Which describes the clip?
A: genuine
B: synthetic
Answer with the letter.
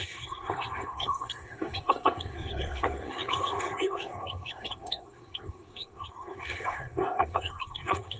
B